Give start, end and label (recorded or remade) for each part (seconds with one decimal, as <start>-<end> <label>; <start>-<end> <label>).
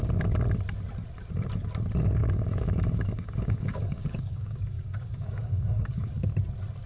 0.0-2.2 recorded; 2.2-6.3 remade; 6.3-6.9 recorded